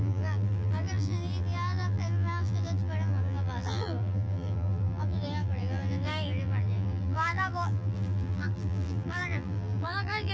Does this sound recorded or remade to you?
remade